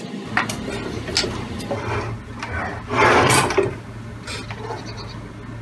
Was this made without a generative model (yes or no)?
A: yes